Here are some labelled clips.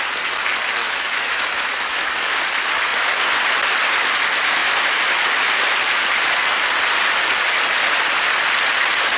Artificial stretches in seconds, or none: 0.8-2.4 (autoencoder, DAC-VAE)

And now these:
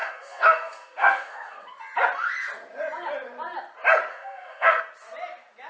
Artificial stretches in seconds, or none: 0.0-1.7 (codec, SNAC); 4.1-4.8

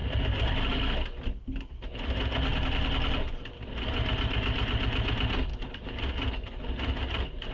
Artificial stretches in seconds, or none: 0.0-0.8 (vocoder, BigVGAN v2); 5.5-7.0

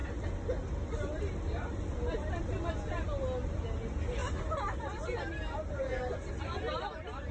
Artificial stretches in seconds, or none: none

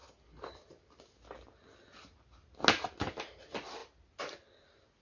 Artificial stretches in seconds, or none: none

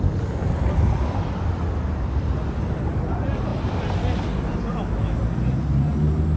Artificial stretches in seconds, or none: 4.7-5.2 (autoencoder, DAC-VAE)